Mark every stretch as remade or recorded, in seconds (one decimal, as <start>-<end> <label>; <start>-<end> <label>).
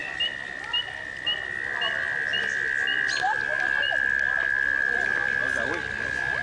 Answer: 0.0-6.4 recorded